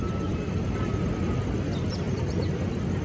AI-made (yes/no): no